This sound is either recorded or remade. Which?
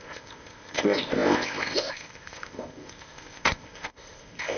remade